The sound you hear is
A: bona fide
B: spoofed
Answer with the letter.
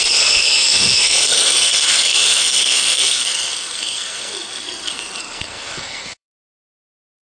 B